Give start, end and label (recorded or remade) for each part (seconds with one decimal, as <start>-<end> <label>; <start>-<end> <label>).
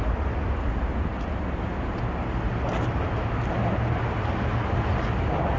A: 0.0-5.6 recorded